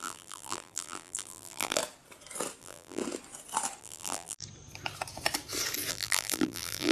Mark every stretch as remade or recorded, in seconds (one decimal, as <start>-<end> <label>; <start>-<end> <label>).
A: 0.0-1.8 remade; 1.8-2.6 recorded; 2.6-3.0 remade; 3.0-3.8 recorded; 3.8-4.4 remade; 4.4-5.9 recorded; 5.9-6.9 remade